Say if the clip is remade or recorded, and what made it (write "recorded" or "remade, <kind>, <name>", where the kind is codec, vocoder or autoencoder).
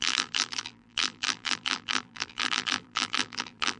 remade, vocoder, BigVGAN v2